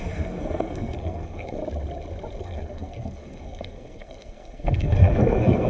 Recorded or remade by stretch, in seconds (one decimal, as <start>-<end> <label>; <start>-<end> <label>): 0.0-1.6 remade; 1.6-2.4 recorded; 2.4-5.7 remade